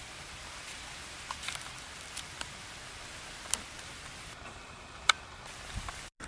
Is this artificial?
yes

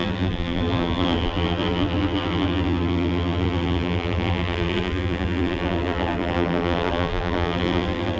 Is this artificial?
yes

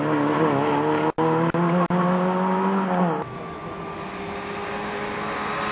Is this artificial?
no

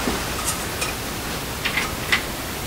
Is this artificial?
no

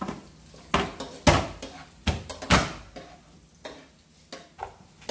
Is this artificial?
no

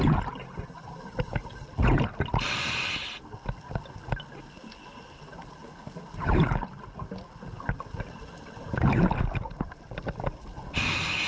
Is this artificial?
no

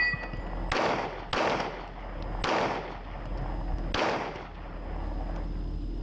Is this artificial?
no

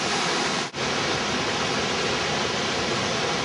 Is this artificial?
no